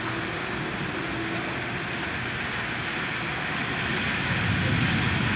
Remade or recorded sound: recorded